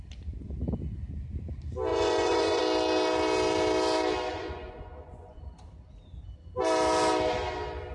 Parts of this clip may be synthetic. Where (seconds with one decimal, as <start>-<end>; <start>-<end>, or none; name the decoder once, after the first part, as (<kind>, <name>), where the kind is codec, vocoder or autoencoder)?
1.9-2.6 (vocoder, Vocos); 4.3-5.4